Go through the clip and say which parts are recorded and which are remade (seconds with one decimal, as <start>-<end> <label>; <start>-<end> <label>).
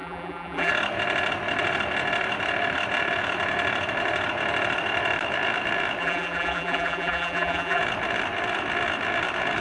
0.0-0.7 remade; 0.7-6.0 recorded; 6.0-7.8 remade; 7.8-9.6 recorded